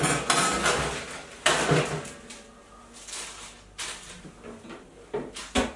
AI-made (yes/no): no